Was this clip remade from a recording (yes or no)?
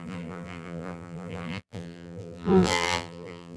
yes